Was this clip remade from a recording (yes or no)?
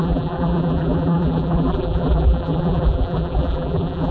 yes